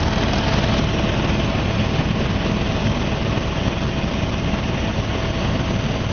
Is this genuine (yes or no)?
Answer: yes